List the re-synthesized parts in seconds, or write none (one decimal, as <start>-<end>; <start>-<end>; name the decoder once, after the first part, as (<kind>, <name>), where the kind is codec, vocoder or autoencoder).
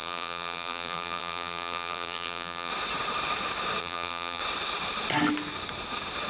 0.0-2.7 (vocoder, BigVGAN v2); 3.8-4.4